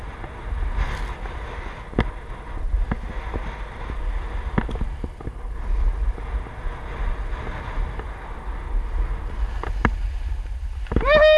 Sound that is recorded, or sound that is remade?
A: recorded